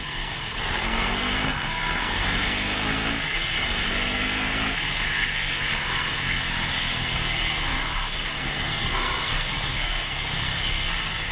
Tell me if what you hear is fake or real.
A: fake